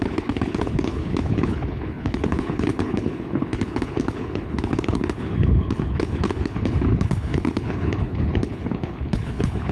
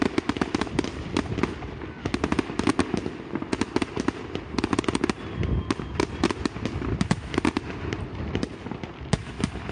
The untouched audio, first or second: second